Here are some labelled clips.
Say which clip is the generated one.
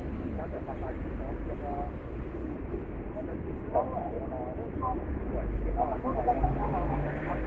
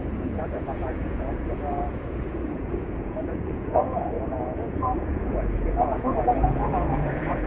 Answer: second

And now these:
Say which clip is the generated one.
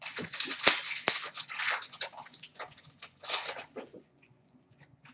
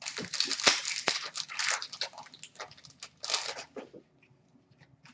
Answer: first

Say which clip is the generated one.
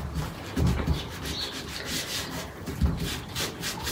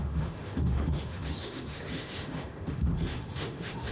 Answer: second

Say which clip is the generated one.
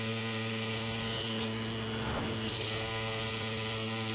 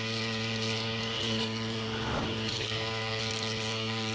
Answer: second